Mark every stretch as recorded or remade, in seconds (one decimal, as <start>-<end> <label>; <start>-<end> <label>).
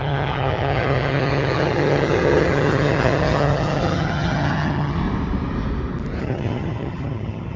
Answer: 0.0-5.0 remade; 5.0-6.2 recorded; 6.2-7.6 remade